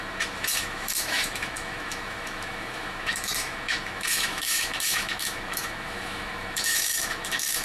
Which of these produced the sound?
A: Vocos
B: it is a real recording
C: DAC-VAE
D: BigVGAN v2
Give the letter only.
C